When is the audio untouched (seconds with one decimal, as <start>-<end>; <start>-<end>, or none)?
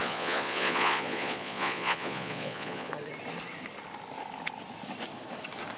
2.9-5.8